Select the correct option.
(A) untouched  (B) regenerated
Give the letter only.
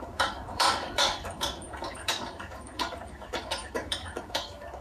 B